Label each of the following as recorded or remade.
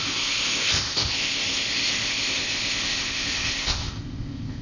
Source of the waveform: remade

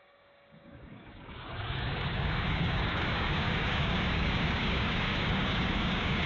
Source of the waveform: remade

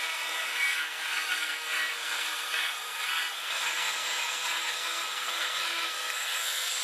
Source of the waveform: remade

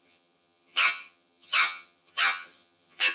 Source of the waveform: remade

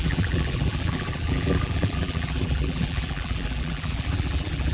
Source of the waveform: remade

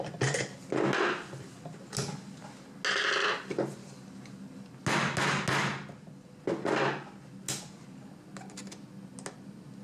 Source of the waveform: recorded